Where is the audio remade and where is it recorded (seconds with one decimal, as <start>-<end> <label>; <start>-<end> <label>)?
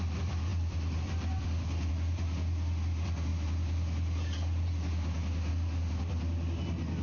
0.0-0.5 recorded; 0.5-1.9 remade; 1.9-7.0 recorded